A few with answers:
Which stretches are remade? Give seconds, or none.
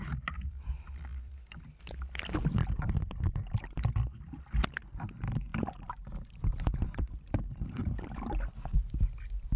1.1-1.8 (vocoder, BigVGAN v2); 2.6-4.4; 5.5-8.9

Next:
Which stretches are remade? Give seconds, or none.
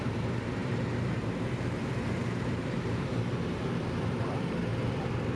0.0-4.7 (vocoder, BigVGAN v2)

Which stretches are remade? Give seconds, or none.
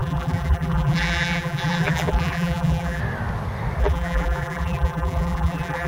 0.0-3.0 (vocoder, BigVGAN v2); 3.8-5.9